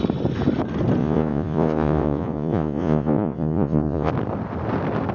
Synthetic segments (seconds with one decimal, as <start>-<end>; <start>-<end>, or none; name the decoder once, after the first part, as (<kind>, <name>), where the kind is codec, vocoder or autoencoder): 1.0-4.1 (vocoder, Vocos)